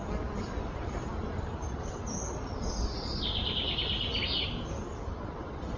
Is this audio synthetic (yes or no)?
no